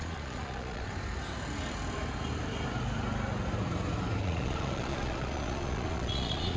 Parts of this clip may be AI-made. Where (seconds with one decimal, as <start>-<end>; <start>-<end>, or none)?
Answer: 0.0-0.9; 4.2-6.6